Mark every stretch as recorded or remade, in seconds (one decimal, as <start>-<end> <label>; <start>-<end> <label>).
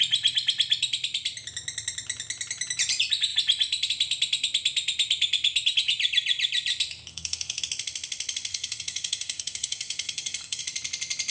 0.0-7.1 recorded; 7.1-7.6 remade; 7.6-8.5 recorded; 8.5-10.6 remade; 10.6-11.3 recorded